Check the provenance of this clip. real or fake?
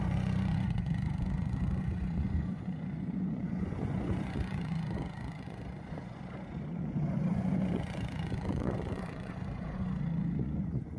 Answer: fake